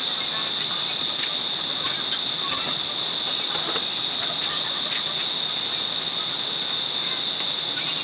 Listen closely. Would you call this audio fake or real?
real